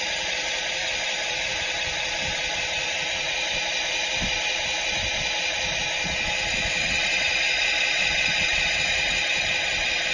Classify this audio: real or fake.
real